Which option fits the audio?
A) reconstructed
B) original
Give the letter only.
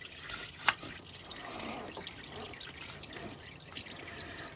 B